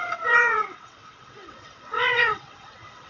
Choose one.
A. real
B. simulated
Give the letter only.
B